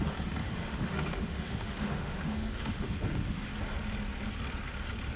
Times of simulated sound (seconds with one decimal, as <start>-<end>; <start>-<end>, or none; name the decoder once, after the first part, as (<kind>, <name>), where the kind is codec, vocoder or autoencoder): 0.4-3.5 (autoencoder, DAC-VAE)